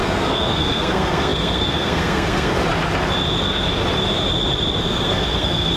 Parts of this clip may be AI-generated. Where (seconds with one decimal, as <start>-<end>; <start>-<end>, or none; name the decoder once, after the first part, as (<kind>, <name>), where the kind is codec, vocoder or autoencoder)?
0.0-2.6 (codec, SNAC); 4.8-5.8